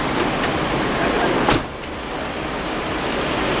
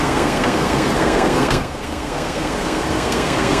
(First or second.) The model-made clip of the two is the second